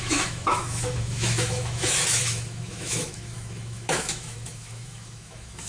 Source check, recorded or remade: remade